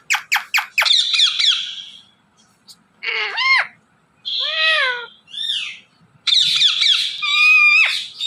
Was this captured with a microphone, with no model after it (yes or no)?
yes